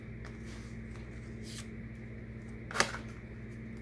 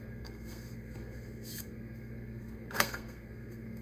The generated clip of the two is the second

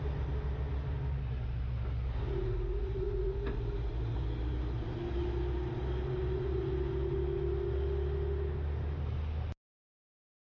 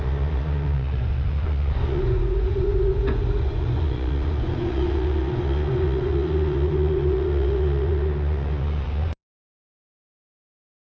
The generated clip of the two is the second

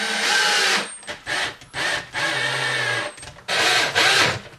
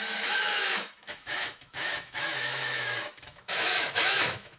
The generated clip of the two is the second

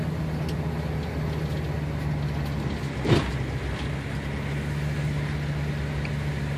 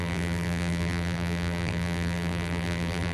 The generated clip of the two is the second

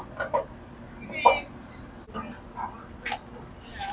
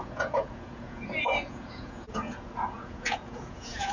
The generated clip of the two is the second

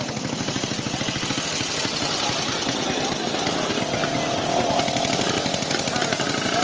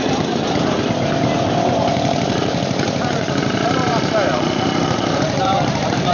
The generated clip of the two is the second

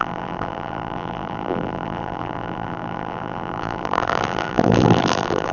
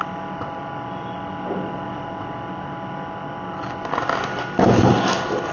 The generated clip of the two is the first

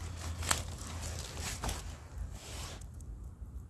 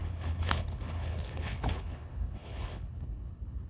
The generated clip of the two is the second